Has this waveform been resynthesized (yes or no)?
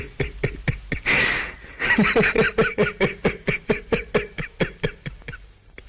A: no